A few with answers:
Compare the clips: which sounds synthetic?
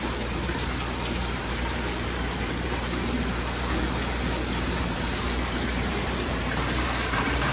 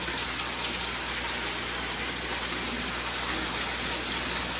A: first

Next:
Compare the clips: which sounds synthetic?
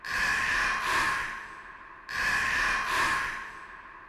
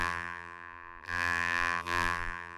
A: second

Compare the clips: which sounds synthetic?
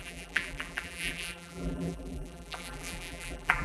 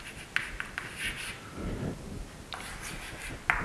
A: first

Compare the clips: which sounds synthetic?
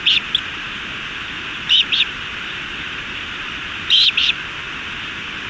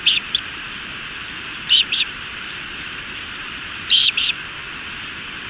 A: second